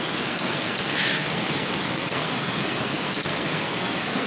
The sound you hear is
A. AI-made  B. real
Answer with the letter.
A